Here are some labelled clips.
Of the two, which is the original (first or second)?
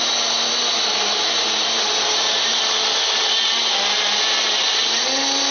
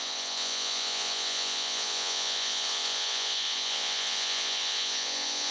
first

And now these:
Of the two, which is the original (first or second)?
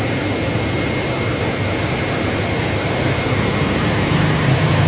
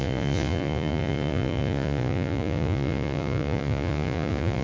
first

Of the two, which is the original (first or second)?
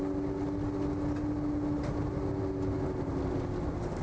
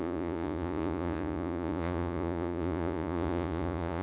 first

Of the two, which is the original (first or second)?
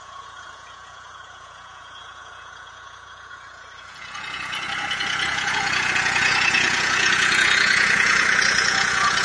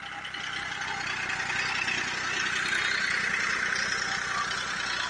second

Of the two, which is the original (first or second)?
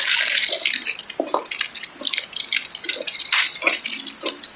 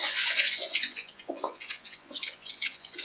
first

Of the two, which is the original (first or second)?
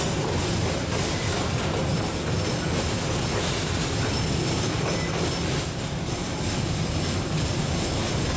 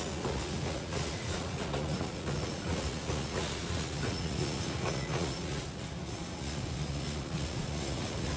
first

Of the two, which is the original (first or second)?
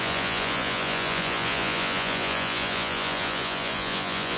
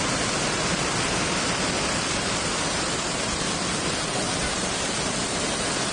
second